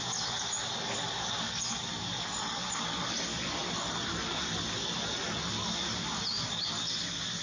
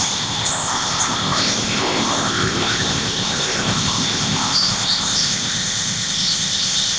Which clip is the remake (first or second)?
second